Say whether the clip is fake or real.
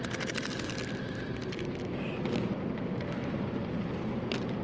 real